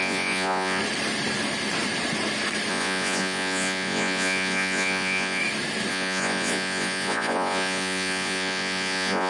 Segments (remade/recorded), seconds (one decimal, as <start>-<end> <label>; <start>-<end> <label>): 0.0-0.8 remade; 0.8-2.7 recorded; 2.7-5.4 remade; 5.4-5.9 recorded; 5.9-9.3 remade